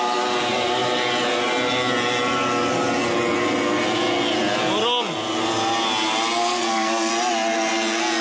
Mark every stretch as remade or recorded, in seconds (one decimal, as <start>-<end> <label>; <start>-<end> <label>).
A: 0.0-6.4 recorded; 6.4-7.1 remade; 7.1-8.2 recorded